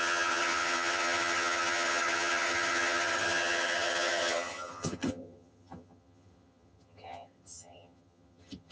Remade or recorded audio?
remade